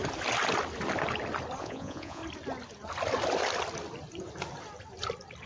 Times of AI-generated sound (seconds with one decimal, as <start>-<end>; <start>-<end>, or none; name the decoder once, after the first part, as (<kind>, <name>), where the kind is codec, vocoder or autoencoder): 1.6-2.2 (vocoder, Vocos)